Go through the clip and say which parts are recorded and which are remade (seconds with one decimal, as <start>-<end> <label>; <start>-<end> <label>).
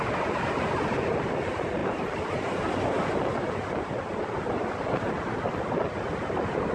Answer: 0.0-1.8 recorded; 1.8-2.6 remade; 2.6-6.7 recorded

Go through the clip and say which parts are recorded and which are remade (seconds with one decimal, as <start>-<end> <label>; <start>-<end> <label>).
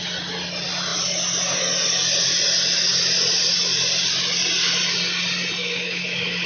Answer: 0.0-5.6 recorded; 5.6-6.5 remade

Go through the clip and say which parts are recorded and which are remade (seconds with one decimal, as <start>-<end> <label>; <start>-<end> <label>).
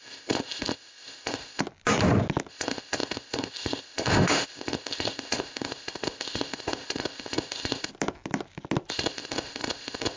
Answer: 0.0-1.6 remade; 1.6-2.5 recorded; 2.5-7.9 remade; 7.9-8.9 recorded; 8.9-10.2 remade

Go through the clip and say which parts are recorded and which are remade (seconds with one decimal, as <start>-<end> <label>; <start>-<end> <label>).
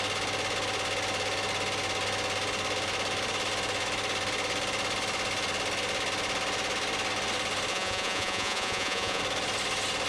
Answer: 0.0-7.7 recorded; 7.7-9.2 remade; 9.2-10.1 recorded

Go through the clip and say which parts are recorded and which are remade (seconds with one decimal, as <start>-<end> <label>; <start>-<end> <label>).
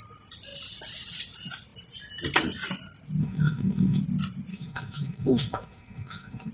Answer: 0.0-3.2 recorded; 3.2-4.0 remade; 4.0-4.5 recorded; 4.5-6.5 remade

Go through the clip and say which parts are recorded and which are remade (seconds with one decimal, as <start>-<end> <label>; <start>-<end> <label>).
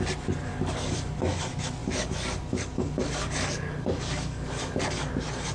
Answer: 0.0-0.5 recorded; 0.5-1.4 remade; 1.4-1.8 recorded; 1.8-5.1 remade; 5.1-5.5 recorded